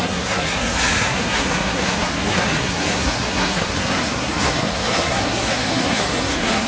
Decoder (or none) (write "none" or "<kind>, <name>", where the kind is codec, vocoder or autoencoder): codec, SNAC